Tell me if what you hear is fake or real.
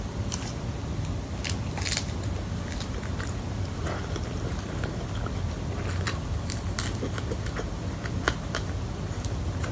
real